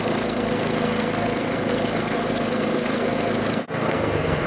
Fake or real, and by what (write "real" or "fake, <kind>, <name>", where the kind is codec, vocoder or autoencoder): fake, codec, SNAC